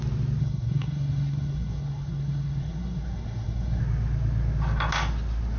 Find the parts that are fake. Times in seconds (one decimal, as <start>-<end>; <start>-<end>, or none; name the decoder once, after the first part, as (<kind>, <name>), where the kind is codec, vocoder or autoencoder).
0.4-3.8 (codec, SNAC)